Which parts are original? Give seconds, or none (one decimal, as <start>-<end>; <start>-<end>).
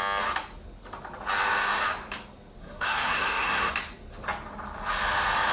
0.0-2.6; 3.7-5.5